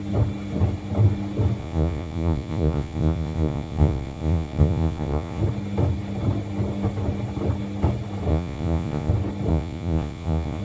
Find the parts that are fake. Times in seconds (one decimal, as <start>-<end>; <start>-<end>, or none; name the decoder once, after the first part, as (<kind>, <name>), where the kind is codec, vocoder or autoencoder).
1.6-5.4 (vocoder, Vocos); 8.3-9.1; 9.5-10.6